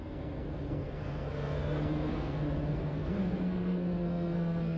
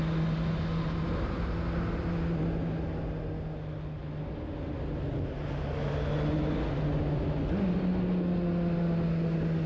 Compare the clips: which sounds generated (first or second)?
first